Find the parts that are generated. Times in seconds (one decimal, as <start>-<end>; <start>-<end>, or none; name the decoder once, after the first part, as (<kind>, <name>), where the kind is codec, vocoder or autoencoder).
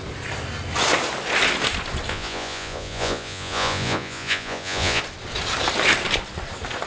2.1-5.0 (vocoder, Vocos)